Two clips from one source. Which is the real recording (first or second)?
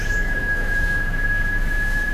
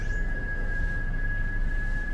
second